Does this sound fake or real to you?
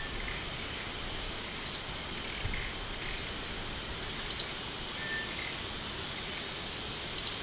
real